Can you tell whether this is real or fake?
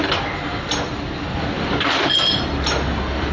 real